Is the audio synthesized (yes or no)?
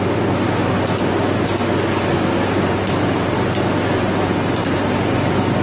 no